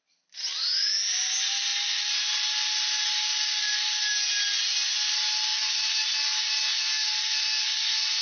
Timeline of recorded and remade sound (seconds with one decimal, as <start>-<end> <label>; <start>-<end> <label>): 0.0-8.2 recorded